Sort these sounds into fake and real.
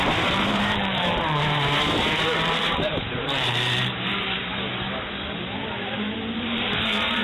fake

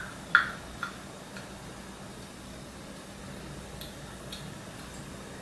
real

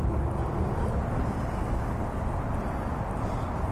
real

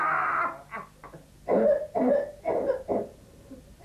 real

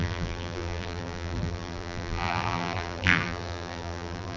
fake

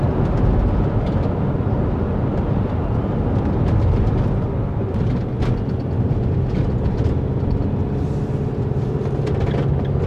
real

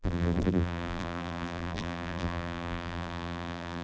fake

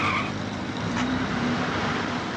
fake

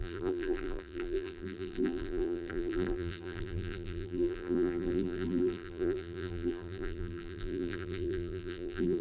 fake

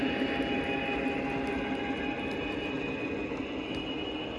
real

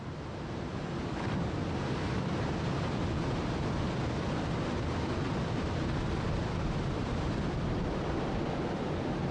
real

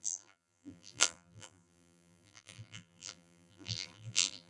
fake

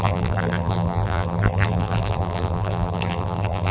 fake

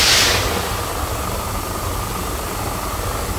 real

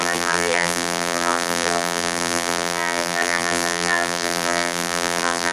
fake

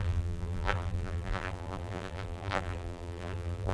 fake